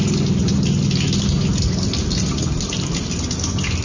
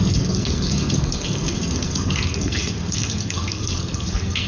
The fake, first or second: second